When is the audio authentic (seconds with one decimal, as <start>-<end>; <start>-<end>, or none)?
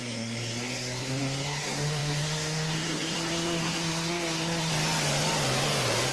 4.7-6.1